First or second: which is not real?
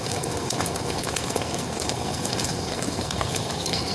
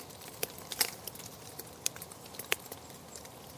first